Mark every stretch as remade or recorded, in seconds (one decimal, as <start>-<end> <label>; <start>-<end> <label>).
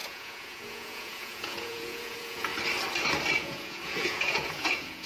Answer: 0.0-2.5 remade; 2.5-3.3 recorded; 3.3-5.1 remade